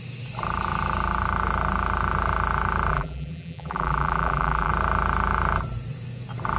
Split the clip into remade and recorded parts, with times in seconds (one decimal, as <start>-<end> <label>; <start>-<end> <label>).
0.0-2.9 recorded; 2.9-4.7 remade; 4.7-6.6 recorded